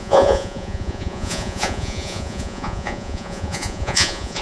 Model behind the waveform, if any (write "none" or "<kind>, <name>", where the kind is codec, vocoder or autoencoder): vocoder, Vocos